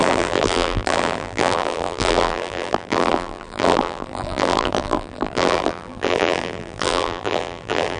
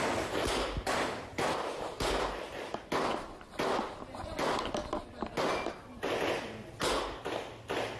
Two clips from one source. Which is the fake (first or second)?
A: first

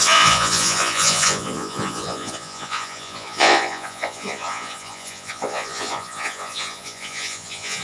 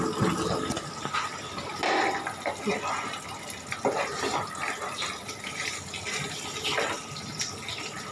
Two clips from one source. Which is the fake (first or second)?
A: first